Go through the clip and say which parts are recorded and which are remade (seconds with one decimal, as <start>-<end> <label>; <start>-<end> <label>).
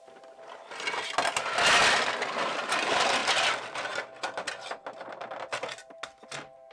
0.0-6.7 recorded